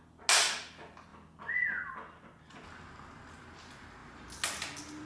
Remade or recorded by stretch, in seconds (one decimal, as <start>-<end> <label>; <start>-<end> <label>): 0.0-5.1 recorded